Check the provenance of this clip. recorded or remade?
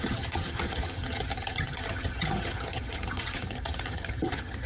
remade